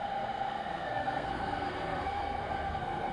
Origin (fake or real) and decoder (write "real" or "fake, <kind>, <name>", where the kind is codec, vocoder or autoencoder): fake, codec, SNAC